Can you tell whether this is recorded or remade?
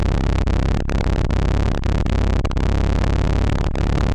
recorded